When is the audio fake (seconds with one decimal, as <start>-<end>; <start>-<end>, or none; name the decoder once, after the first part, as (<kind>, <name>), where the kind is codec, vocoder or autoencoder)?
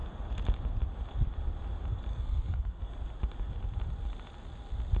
2.1-2.9 (codec, SNAC)